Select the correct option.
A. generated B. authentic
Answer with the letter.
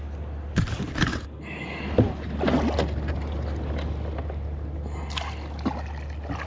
B